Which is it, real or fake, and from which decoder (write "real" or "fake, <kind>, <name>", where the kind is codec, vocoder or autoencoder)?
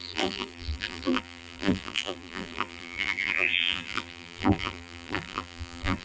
fake, vocoder, BigVGAN v2